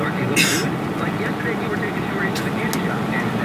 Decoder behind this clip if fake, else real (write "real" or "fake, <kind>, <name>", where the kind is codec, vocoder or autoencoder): real